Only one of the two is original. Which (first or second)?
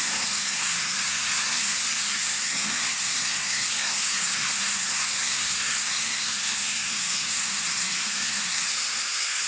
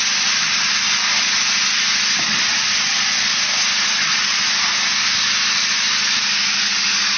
second